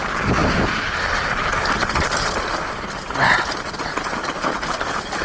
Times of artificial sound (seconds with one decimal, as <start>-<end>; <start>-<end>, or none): none